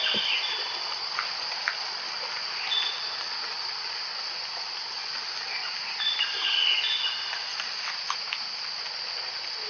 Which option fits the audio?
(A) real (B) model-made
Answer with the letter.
A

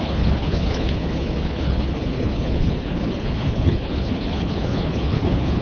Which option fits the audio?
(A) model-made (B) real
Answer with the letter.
A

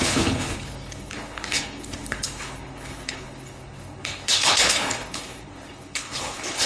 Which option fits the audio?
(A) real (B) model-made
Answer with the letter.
B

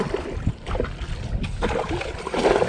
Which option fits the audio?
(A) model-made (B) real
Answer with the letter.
B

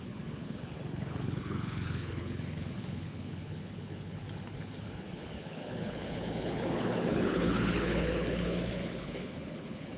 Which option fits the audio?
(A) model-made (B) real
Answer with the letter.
A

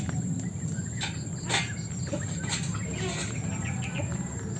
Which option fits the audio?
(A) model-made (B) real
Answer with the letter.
B